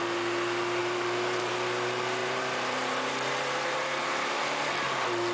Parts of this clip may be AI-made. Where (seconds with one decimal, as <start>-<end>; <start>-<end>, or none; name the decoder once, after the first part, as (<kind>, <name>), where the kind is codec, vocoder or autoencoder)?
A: 0.8-1.5 (vocoder, BigVGAN v2); 2.2-4.7